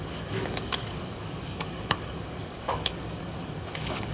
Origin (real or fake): fake